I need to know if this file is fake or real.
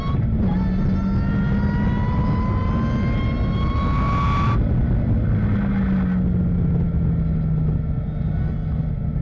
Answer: real